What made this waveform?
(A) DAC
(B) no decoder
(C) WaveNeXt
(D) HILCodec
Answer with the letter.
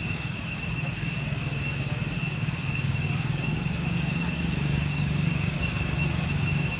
A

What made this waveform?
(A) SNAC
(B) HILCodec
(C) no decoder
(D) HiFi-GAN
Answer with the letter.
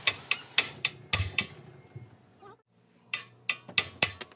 C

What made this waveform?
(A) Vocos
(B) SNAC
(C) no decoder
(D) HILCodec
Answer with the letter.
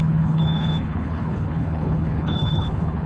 D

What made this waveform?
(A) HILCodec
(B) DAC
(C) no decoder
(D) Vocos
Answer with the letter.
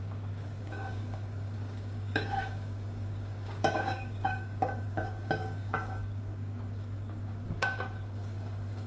B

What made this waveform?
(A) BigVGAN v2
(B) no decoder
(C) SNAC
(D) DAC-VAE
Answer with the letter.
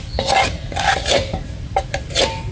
B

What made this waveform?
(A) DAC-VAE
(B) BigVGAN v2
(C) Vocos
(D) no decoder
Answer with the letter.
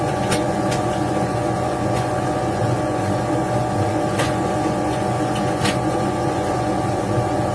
C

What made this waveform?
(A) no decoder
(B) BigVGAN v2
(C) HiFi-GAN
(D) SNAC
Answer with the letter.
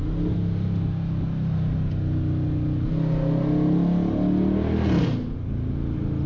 A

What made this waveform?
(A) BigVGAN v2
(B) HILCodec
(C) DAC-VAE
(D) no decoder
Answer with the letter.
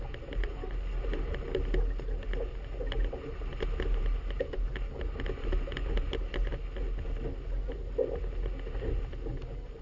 D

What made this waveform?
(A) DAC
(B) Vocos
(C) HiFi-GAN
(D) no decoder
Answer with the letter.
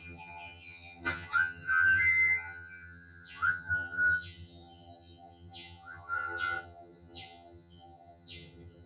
C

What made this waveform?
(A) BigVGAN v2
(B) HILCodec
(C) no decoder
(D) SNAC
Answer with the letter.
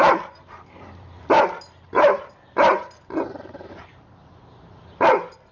A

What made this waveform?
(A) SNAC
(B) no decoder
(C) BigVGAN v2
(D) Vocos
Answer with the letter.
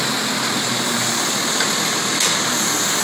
B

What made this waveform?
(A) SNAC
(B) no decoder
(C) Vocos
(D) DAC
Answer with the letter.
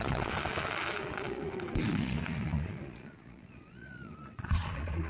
C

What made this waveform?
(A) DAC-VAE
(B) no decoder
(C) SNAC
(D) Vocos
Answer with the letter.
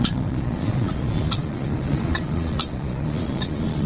D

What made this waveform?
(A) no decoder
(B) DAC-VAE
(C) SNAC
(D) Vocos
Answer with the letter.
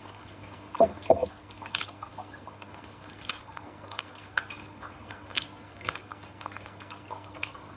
C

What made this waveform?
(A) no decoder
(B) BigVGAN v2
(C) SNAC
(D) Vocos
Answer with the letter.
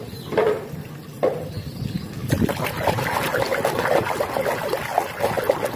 A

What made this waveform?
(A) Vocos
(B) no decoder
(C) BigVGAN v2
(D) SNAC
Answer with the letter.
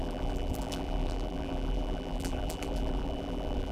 C